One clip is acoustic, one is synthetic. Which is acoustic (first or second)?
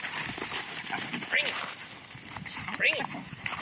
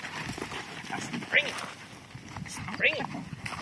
second